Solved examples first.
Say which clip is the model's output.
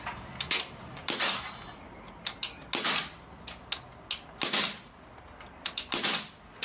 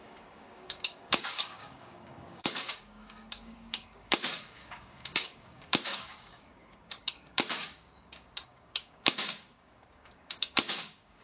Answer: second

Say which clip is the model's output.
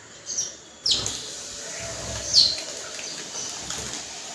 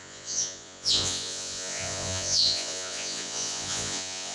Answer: second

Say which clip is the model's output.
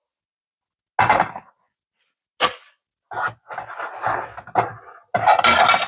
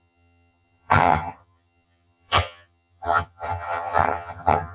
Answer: second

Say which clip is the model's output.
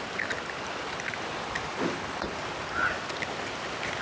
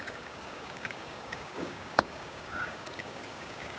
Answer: second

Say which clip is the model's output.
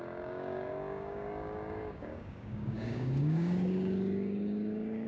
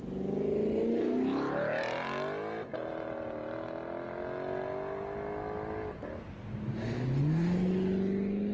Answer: first